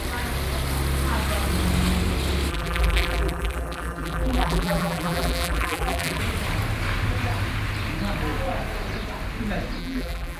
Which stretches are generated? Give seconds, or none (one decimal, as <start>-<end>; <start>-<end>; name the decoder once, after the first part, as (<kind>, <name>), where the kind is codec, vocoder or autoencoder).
2.5-6.2 (vocoder, BigVGAN v2); 9.8-10.4